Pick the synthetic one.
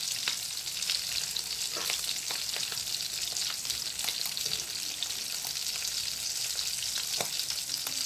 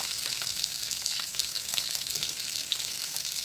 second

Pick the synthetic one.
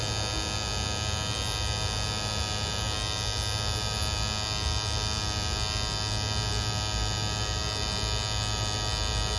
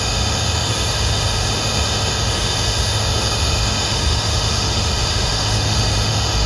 second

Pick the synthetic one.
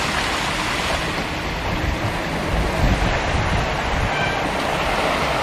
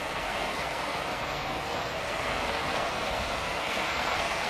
second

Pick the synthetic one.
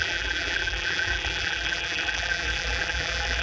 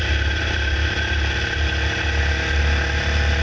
first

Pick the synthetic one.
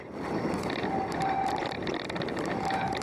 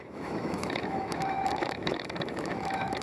second